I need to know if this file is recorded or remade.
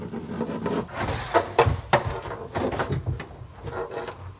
recorded